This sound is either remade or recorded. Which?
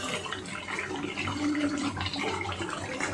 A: recorded